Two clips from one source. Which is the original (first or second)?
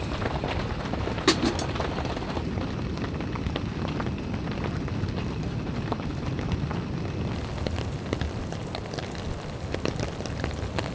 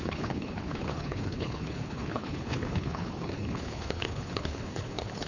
first